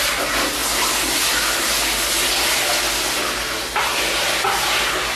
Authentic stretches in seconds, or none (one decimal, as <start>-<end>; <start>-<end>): 0.0-5.2